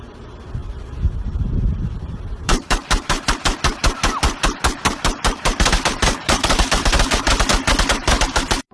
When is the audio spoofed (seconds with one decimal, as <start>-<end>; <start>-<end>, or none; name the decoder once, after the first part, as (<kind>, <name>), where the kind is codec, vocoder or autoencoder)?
0.6-3.3 (vocoder, BigVGAN v2); 6.2-7.3